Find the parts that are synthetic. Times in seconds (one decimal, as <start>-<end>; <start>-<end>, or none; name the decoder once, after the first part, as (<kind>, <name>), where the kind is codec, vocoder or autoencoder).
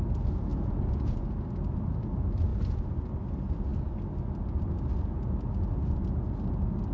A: 0.5-1.1 (vocoder, Vocos)